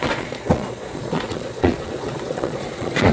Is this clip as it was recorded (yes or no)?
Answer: no